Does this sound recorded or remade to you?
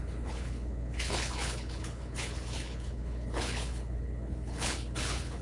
remade